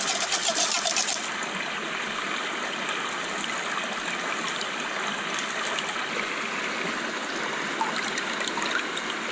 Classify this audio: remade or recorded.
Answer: recorded